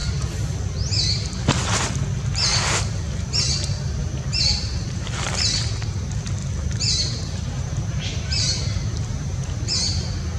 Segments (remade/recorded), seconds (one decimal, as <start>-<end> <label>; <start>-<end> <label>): 0.0-4.0 recorded; 4.0-5.7 remade; 5.7-6.4 recorded; 6.4-9.6 remade; 9.6-10.4 recorded